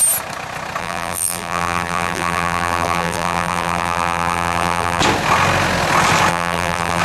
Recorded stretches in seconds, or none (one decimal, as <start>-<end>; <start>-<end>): 0.0-0.8; 5.0-6.3